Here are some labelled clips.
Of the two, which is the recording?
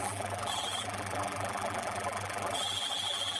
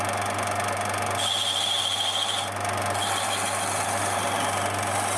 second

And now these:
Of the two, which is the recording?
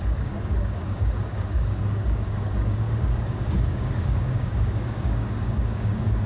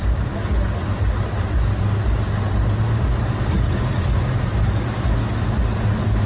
second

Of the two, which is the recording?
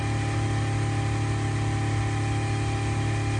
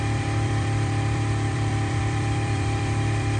first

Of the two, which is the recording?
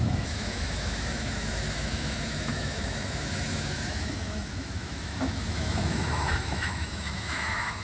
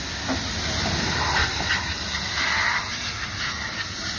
second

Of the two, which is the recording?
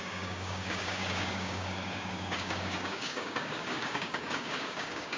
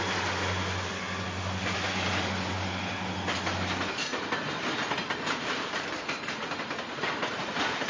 second